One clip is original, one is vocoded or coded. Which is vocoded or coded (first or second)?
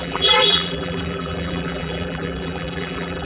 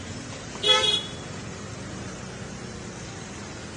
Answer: first